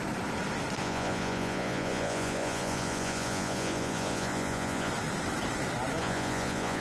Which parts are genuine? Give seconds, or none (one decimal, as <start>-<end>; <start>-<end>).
0.0-0.8; 4.9-6.0